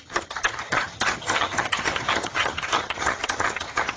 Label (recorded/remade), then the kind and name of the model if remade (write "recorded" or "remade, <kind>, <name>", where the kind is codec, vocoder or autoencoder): remade, vocoder, HiFi-GAN